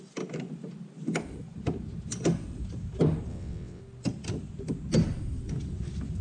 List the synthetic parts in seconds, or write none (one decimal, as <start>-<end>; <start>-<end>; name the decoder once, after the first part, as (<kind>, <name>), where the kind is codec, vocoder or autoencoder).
3.3-3.8 (vocoder, WaveNeXt)